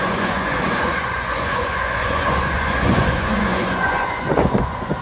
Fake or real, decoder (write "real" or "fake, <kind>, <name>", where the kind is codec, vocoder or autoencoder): fake, vocoder, Vocos